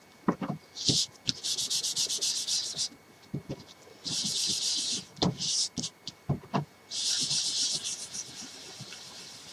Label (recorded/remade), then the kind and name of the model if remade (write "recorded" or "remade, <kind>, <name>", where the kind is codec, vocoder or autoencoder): remade, vocoder, BigVGAN v2